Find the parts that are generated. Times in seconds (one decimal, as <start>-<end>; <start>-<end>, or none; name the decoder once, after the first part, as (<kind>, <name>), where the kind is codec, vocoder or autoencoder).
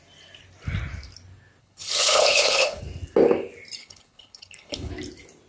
1.6-2.8 (codec, HILCodec); 3.8-4.9